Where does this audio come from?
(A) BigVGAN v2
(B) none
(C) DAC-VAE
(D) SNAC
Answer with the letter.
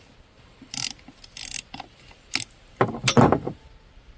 B